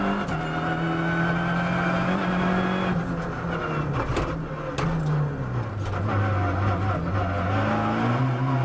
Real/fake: real